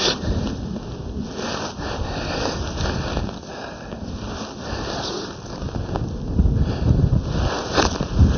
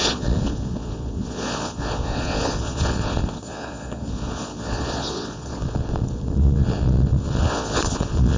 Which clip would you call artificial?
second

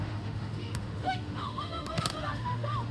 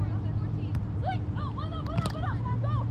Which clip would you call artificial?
first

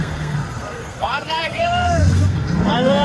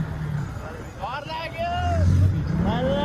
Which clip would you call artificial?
first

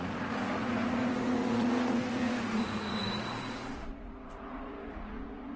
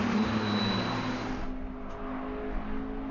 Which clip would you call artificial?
first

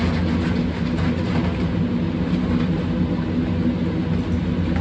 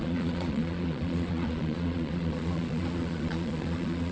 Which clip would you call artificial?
second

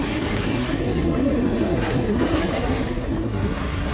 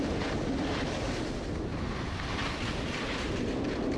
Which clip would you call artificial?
first